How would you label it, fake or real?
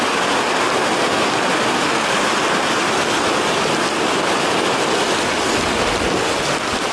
real